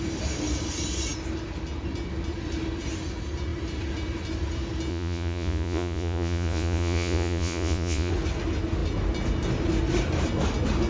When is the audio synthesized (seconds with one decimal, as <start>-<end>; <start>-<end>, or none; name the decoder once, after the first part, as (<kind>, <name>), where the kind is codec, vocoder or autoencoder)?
4.9-8.1 (vocoder, Vocos)